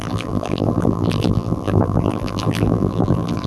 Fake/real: fake